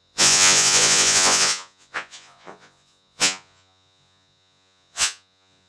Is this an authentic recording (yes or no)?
no